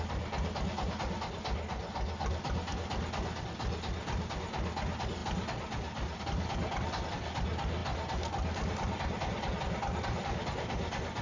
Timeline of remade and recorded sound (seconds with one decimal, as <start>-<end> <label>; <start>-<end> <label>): 0.0-11.2 recorded